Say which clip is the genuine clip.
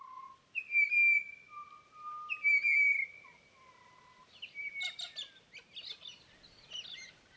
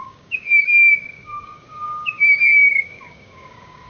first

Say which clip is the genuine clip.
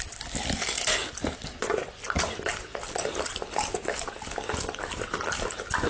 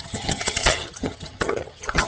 first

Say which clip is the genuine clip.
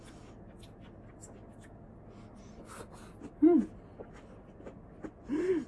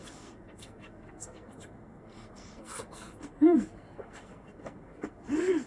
first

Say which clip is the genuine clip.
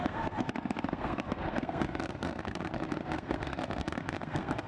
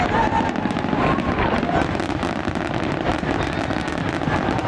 second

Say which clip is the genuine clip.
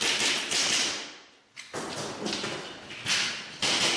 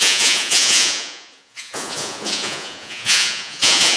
first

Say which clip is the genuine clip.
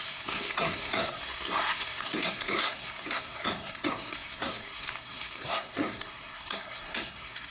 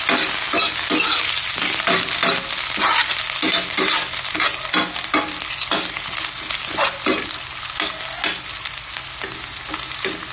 second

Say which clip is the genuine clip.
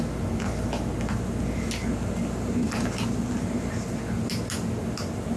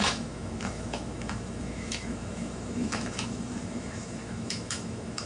first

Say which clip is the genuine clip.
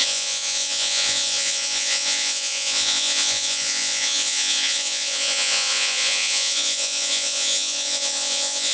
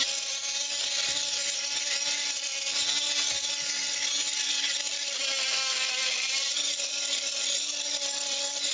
second